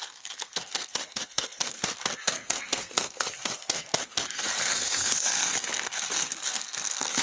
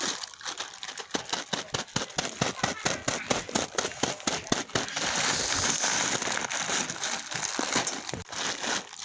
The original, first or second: second